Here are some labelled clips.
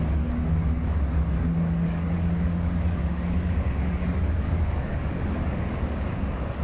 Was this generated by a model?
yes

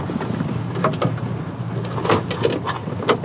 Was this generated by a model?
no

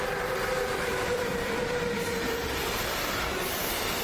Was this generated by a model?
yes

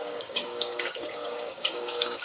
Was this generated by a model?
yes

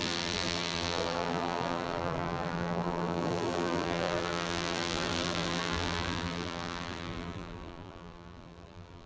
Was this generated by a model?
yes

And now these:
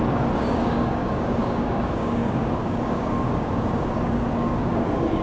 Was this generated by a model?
yes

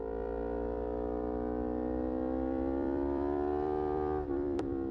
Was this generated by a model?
yes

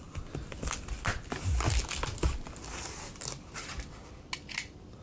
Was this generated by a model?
no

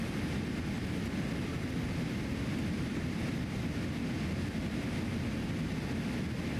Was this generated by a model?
no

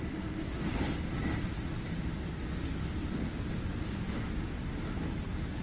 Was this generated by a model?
no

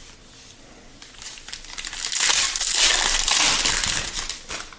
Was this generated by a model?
no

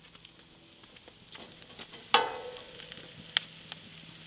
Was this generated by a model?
no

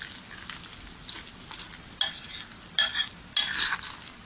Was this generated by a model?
no